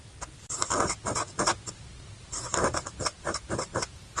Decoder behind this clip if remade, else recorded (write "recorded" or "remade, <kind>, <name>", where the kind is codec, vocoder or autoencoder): recorded